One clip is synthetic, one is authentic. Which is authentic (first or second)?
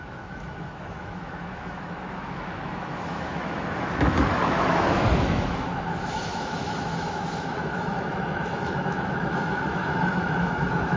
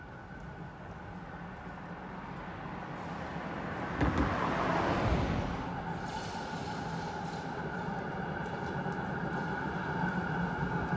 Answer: second